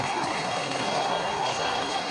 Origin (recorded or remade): remade